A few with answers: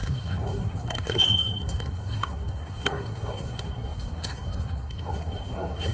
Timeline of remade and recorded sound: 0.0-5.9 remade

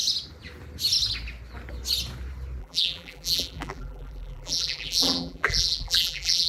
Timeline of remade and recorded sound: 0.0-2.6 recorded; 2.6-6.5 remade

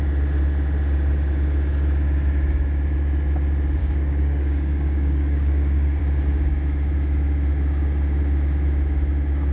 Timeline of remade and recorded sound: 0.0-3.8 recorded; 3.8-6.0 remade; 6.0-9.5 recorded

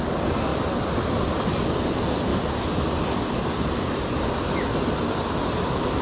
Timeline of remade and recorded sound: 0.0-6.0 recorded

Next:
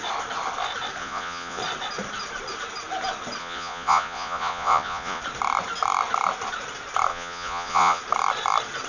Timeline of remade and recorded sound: 0.0-1.0 recorded; 1.0-1.6 remade; 1.6-3.4 recorded; 3.4-5.2 remade; 5.2-7.1 recorded; 7.1-8.0 remade; 8.0-8.9 recorded

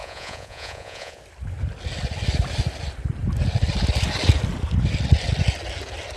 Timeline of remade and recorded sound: 0.0-1.2 remade; 1.2-6.2 recorded

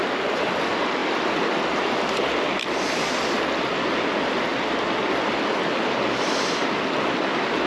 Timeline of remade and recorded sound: 0.0-7.7 recorded

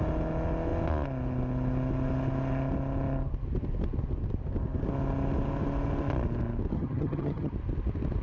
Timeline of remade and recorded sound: 0.0-6.7 recorded; 6.7-7.5 remade; 7.5-8.2 recorded